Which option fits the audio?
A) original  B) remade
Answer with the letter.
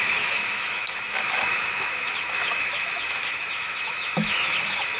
B